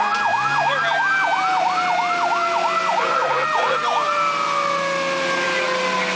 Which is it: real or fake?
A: real